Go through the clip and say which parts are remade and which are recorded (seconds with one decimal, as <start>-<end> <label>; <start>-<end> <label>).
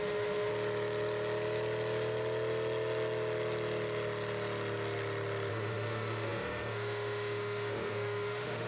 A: 0.0-0.5 remade; 0.5-5.5 recorded; 5.5-8.7 remade